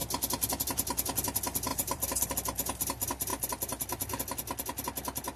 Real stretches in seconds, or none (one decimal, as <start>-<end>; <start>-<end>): 0.0-1.7; 2.3-5.4